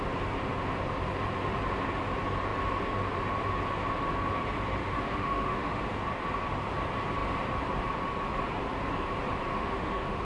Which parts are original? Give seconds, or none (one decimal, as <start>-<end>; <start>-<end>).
0.0-4.8; 5.8-9.5